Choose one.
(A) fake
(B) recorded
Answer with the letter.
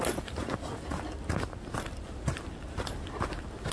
B